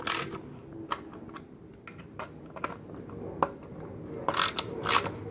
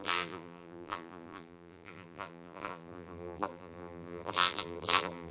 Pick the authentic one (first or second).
first